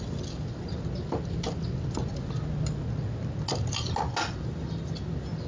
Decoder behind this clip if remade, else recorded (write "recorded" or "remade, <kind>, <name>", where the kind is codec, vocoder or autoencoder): recorded